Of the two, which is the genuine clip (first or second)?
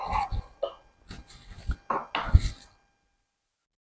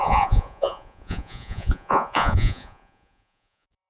first